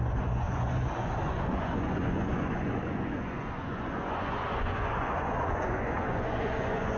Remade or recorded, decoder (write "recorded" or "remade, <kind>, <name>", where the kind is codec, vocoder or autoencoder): remade, vocoder, Vocos